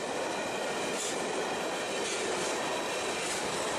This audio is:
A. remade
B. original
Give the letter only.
B